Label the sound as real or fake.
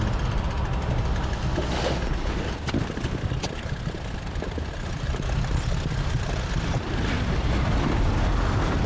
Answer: real